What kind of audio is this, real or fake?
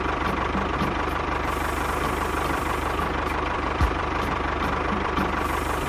fake